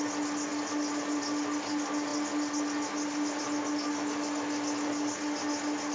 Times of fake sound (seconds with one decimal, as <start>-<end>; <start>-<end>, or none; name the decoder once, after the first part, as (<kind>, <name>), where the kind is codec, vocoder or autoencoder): none